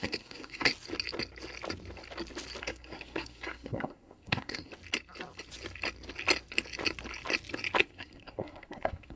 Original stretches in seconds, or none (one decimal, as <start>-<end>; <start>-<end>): 0.7-2.6; 4.7-7.8